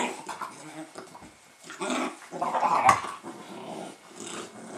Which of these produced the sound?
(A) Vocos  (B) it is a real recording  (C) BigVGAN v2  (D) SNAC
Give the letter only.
B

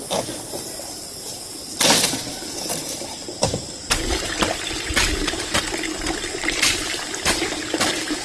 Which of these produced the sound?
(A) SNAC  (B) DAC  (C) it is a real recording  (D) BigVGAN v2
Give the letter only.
D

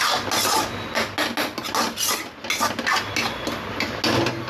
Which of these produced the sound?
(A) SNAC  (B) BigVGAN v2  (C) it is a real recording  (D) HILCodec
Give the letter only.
C